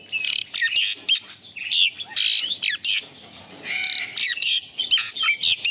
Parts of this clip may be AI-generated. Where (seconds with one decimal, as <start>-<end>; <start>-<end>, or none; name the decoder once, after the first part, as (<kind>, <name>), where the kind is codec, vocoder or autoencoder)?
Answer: 4.2-4.8 (vocoder, HiFi-GAN)